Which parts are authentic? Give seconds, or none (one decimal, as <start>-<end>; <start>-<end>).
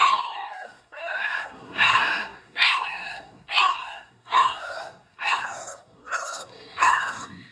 none